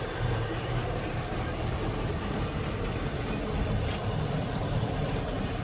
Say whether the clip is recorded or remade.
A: remade